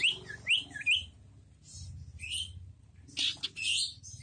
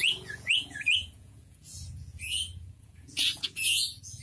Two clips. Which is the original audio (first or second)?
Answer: first